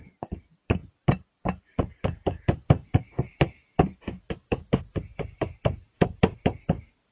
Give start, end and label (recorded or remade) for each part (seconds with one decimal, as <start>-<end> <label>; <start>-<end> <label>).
0.0-5.1 recorded; 5.1-7.1 remade